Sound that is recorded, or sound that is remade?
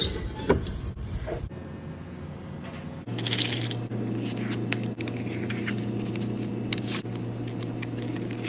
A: recorded